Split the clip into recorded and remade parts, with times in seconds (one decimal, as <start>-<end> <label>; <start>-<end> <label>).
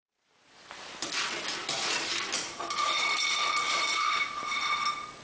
0.0-1.6 recorded; 1.6-4.7 remade; 4.7-5.2 recorded